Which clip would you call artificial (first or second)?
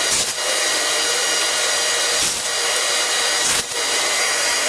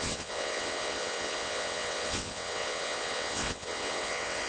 second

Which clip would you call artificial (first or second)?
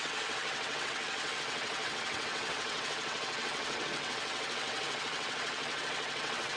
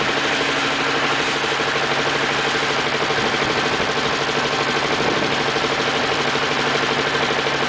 first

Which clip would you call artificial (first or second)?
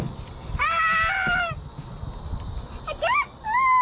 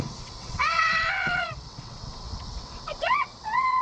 second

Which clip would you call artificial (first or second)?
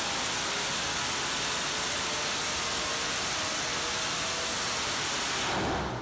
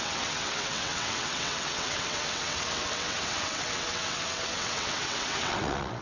second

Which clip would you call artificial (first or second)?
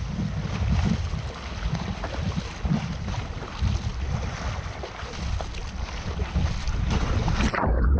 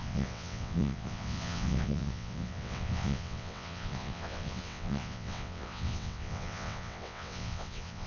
second